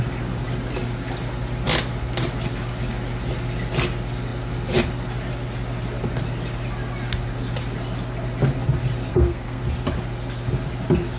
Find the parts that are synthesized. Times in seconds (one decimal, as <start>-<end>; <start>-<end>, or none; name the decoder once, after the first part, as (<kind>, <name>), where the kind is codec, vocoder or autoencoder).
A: 9.1-9.6 (codec, SNAC)